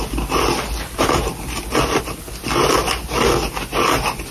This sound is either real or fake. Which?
real